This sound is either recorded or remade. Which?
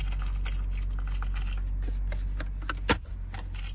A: recorded